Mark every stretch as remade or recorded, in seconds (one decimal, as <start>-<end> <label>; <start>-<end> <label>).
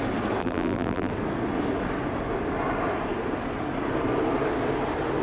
0.0-0.4 recorded; 0.4-1.1 remade; 1.1-5.2 recorded